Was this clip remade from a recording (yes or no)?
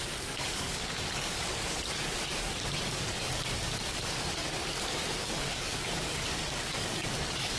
yes